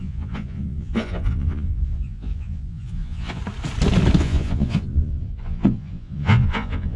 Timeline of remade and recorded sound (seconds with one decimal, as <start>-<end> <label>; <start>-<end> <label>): 0.0-3.4 remade; 3.4-4.2 recorded; 4.2-7.0 remade